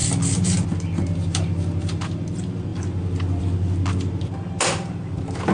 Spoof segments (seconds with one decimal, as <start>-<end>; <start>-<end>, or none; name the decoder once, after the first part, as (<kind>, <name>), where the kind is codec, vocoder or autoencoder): none